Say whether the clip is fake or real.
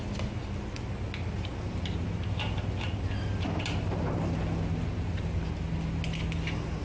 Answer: real